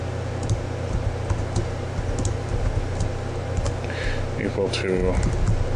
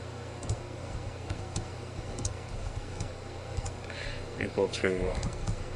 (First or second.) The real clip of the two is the first